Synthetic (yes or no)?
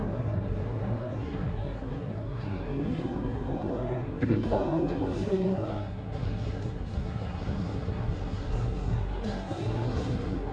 yes